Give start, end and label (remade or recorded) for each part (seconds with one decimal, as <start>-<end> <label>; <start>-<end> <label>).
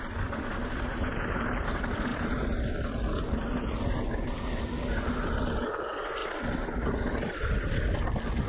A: 0.0-8.5 recorded